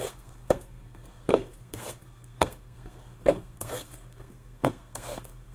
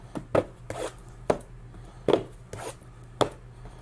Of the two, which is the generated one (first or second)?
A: first